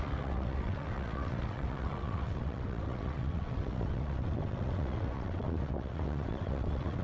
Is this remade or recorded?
remade